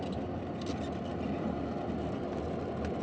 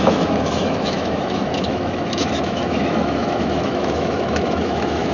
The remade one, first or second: second